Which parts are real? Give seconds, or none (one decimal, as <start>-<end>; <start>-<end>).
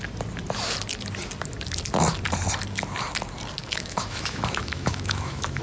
0.0-3.6